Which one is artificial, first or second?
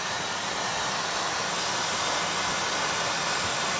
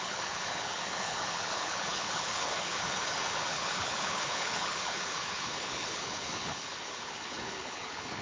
second